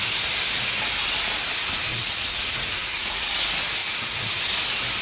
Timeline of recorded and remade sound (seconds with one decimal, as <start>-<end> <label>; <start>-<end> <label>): 0.0-1.9 recorded; 1.9-3.3 remade; 3.3-3.8 recorded; 3.8-4.4 remade; 4.4-5.0 recorded